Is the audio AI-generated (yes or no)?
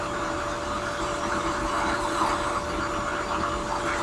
no